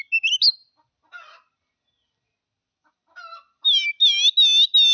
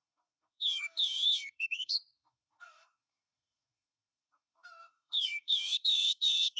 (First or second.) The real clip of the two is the first